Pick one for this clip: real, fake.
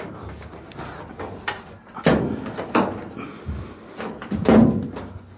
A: real